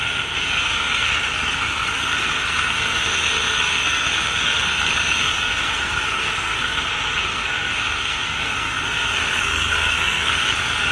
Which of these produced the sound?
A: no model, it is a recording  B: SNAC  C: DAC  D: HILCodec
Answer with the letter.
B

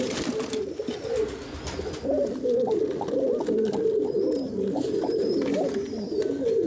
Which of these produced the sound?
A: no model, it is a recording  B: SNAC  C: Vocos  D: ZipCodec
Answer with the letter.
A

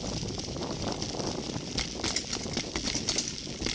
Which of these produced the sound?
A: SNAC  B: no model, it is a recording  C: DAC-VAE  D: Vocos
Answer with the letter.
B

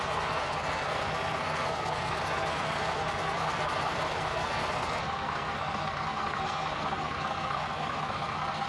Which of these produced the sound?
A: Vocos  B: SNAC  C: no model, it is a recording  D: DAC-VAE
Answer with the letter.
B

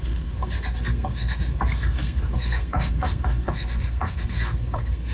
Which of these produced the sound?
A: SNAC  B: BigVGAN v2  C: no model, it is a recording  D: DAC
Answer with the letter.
A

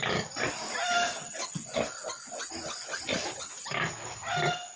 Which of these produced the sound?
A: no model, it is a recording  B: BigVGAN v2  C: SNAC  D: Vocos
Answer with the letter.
A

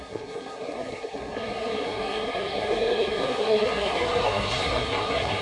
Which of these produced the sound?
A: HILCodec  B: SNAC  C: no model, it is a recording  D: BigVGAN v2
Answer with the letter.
B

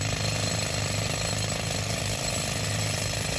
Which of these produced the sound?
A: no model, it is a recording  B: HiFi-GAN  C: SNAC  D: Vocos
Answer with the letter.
A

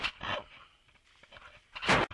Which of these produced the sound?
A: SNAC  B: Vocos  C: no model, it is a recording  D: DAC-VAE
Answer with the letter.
C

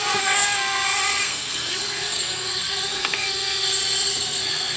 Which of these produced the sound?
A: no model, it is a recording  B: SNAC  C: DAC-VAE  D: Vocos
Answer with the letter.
B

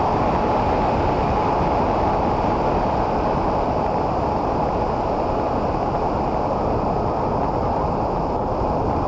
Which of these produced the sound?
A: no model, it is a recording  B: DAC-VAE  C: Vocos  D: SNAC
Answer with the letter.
A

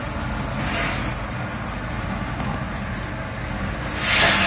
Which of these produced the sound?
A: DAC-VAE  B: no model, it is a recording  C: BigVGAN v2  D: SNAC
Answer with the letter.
B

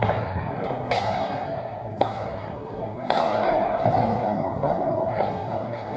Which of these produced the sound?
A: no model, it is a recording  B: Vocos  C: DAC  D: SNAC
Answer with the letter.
D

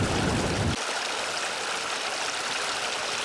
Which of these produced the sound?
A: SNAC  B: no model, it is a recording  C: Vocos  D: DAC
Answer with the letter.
B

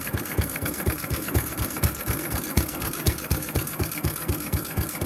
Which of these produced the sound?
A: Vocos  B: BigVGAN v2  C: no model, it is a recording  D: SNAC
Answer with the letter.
D